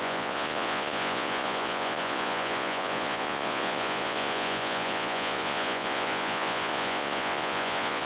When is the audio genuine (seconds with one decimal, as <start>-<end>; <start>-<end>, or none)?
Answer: none